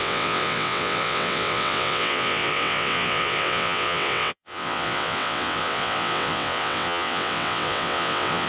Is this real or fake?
fake